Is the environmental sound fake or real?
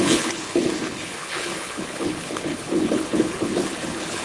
fake